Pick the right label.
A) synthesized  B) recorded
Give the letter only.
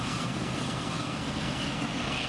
A